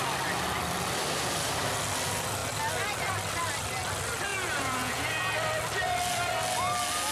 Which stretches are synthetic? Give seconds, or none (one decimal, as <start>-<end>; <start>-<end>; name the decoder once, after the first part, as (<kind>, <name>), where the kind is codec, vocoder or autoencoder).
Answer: 4.3-5.3 (vocoder, Vocos)